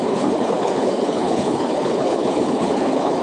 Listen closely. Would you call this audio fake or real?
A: fake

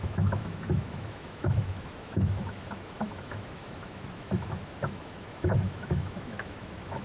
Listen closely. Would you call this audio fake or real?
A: fake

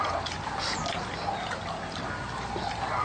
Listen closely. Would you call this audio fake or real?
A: real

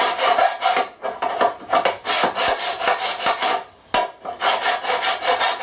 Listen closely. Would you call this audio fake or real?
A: real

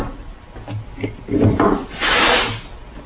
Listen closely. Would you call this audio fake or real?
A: real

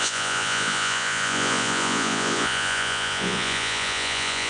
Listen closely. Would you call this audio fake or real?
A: fake